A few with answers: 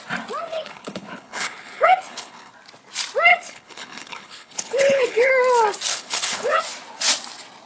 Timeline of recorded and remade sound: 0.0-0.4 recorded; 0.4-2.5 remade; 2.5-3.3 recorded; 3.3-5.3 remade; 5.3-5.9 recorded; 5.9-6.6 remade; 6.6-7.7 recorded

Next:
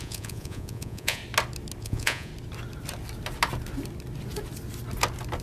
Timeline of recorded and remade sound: 0.0-1.2 remade; 1.2-1.8 recorded; 1.8-2.3 remade; 2.3-5.4 recorded

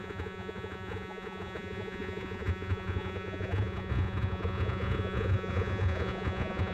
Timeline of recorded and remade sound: 0.0-6.7 remade

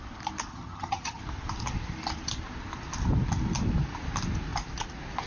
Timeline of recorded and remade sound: 0.0-0.5 recorded; 0.5-1.2 remade; 1.2-5.3 recorded

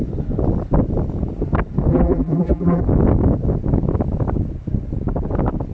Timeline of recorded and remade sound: 0.0-1.9 recorded; 1.9-2.8 remade; 2.8-5.7 recorded

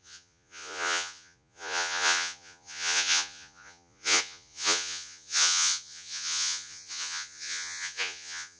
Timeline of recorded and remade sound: 0.0-8.6 remade

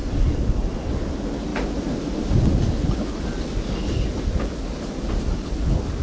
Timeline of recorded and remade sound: 0.0-6.0 recorded